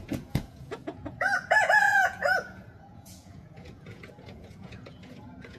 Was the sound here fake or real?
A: fake